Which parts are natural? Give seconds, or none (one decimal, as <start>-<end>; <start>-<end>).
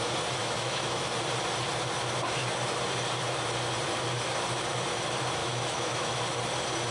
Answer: 0.0-0.4; 1.1-5.4; 6.2-6.9